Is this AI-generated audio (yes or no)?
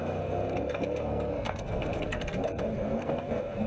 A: yes